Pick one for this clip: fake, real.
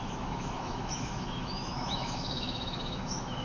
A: fake